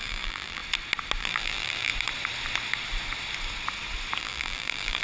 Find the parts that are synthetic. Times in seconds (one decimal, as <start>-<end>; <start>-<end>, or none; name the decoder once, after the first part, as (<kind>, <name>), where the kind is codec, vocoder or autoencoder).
0.0-0.6 (vocoder, BigVGAN v2); 1.2-1.9; 4.2-5.0